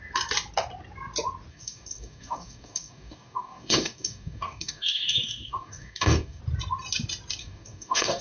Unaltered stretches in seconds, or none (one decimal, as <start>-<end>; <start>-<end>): 0.0-1.5; 6.4-7.4